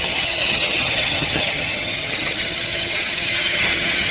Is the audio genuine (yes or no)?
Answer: no